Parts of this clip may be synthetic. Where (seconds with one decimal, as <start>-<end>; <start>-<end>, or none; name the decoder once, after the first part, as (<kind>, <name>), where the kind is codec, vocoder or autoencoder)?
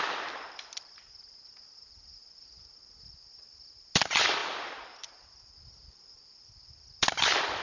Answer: 4.4-5.5 (vocoder, BigVGAN v2)